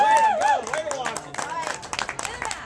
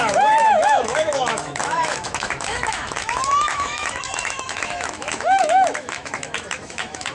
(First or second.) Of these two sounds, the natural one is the first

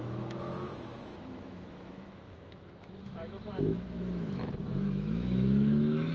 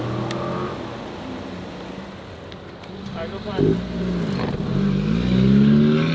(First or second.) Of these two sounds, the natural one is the second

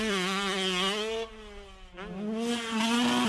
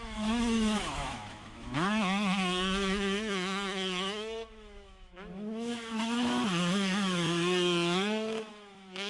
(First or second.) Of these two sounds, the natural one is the first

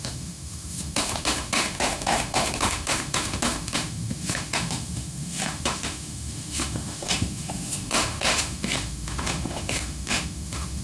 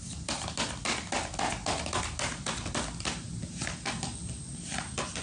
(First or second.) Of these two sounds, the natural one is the second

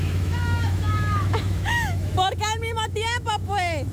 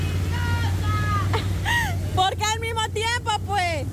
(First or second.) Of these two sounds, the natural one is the second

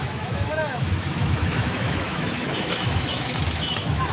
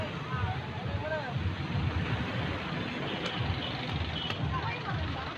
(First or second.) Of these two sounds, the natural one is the second